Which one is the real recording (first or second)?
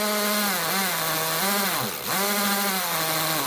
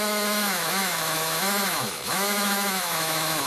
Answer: first